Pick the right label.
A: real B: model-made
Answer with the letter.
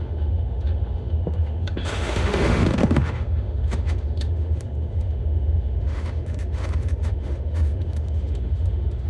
B